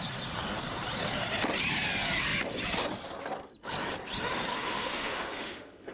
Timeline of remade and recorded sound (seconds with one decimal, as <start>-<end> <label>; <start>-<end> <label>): 0.0-4.5 recorded; 4.5-5.9 remade